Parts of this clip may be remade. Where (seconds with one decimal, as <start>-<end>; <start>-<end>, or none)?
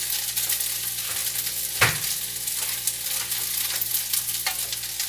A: none